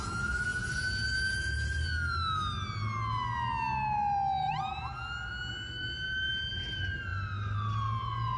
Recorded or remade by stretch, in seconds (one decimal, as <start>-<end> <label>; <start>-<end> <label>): 0.0-8.4 recorded